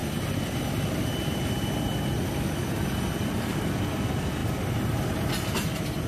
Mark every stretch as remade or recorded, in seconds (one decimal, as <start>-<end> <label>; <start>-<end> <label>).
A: 0.0-6.1 recorded

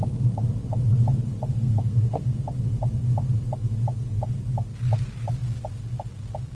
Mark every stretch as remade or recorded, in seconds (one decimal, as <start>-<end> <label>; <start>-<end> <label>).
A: 0.0-1.5 recorded; 1.5-2.4 remade; 2.4-6.5 recorded

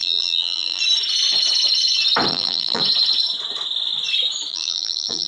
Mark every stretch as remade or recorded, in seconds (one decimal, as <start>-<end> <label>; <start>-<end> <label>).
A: 0.0-0.8 remade; 0.8-2.3 recorded; 2.3-2.8 remade; 2.8-4.5 recorded; 4.5-5.3 remade

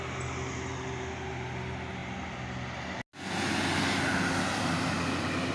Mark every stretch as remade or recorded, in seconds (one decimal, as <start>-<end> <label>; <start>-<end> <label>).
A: 0.0-5.5 recorded

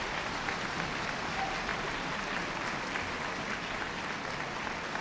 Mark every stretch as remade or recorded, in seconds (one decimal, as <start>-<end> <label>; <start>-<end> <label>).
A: 0.0-0.7 remade; 0.7-5.0 recorded

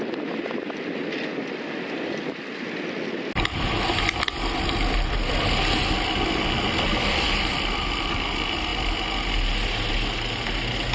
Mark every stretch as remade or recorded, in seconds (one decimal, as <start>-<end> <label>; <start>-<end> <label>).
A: 0.0-10.9 recorded

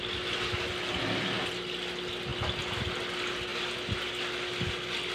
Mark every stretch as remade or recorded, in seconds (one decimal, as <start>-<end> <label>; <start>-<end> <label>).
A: 0.0-5.1 recorded